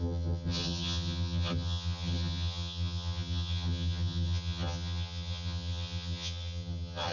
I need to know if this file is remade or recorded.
remade